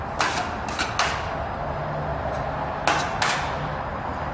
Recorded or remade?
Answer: recorded